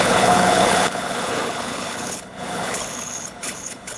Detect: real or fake fake